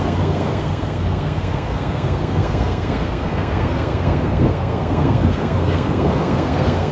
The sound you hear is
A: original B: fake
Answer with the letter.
B